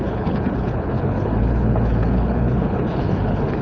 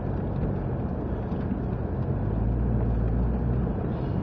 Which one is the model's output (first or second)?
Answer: first